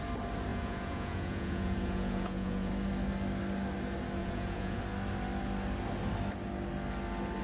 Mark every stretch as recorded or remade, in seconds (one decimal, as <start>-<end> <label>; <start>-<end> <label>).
0.0-0.5 recorded; 0.5-2.7 remade; 2.7-4.2 recorded; 4.2-4.8 remade; 4.8-7.4 recorded